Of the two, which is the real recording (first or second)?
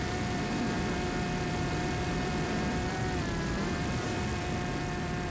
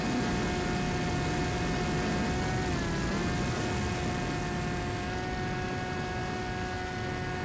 second